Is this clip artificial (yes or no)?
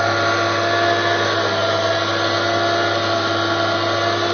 no